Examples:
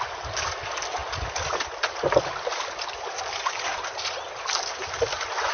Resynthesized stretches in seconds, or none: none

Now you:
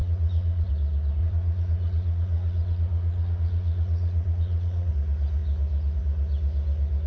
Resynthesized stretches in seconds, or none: 0.0-0.7; 1.2-4.9

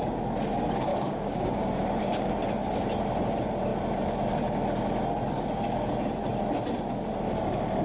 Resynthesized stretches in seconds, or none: 0.9-1.6; 2.0-2.8

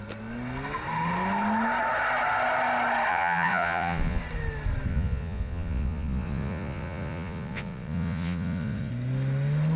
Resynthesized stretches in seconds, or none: 3.1-4.2; 4.9-8.9